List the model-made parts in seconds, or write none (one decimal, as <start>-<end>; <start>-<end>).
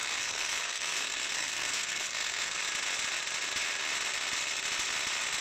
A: 0.0-2.6